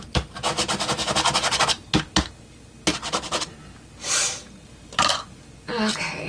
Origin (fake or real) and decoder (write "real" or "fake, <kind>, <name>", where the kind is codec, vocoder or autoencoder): real